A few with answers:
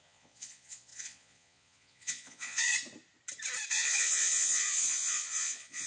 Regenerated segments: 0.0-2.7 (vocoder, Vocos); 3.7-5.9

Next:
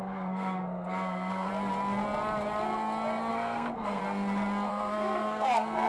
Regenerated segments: 0.0-1.5 (codec, SNAC); 3.3-4.0; 4.7-5.9

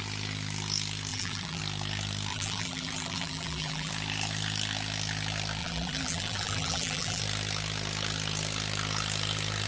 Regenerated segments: 1.1-1.6 (vocoder, BigVGAN v2); 2.3-3.9; 5.6-7.2

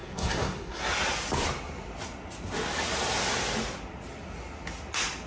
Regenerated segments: 0.0-0.8 (codec, SNAC)

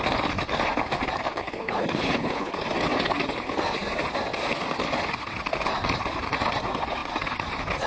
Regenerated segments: 1.4-2.5 (codec, HILCodec)

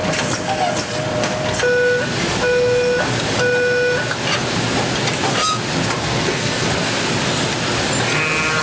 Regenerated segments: 6.0-6.7 (codec, SNAC)

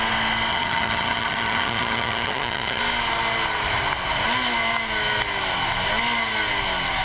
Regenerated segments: 0.5-2.8 (vocoder, HiFi-GAN)